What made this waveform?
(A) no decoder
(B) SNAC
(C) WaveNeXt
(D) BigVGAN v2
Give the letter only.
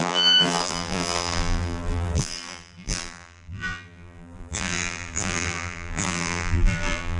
D